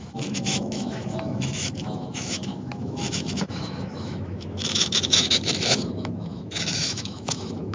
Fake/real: fake